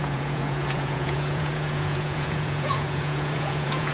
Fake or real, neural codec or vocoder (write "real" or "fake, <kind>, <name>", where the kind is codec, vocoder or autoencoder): fake, vocoder, Vocos